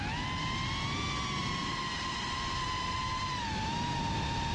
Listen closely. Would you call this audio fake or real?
real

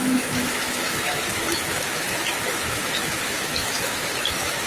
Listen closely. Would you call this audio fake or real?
fake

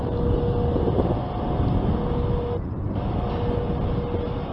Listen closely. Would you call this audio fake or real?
real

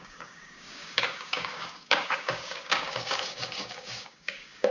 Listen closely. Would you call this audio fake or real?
fake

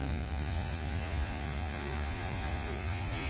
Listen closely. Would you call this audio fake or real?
fake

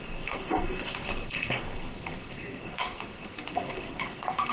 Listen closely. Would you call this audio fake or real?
fake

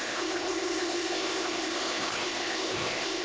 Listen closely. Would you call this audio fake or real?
fake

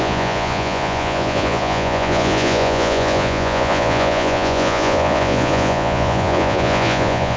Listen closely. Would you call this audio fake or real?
fake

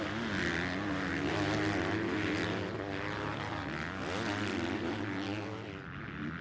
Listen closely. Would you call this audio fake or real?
real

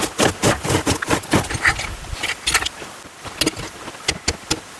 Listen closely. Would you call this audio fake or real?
real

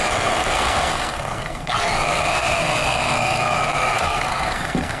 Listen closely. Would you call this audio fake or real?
fake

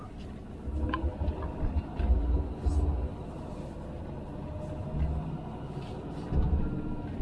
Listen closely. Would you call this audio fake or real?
real